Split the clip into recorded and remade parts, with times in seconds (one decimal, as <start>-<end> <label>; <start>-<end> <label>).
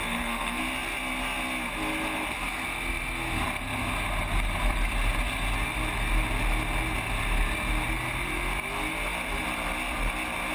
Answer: 0.0-0.6 remade; 0.6-10.5 recorded